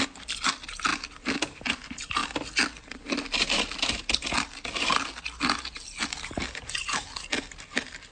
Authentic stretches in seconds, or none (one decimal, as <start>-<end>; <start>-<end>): 0.0-8.1